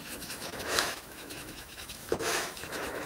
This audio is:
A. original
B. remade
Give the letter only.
B